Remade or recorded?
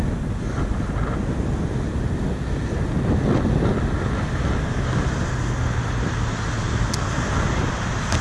recorded